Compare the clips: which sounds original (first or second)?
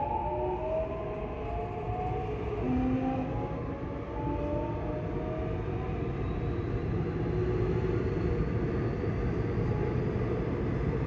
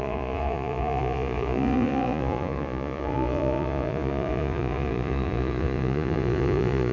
first